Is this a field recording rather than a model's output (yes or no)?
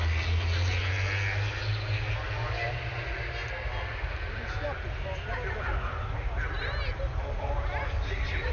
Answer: yes